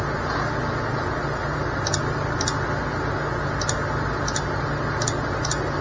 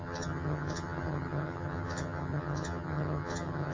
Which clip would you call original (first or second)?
first